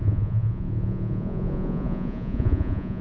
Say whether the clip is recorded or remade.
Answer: remade